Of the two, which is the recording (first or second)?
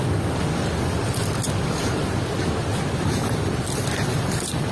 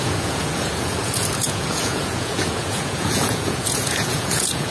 first